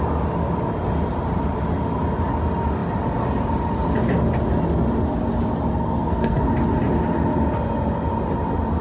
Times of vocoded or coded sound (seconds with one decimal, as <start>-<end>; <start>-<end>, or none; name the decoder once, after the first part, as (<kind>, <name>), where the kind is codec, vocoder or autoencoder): 5.7-6.4 (codec, SNAC)